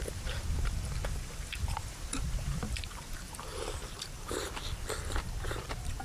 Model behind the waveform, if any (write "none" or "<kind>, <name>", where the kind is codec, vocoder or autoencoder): vocoder, BigVGAN v2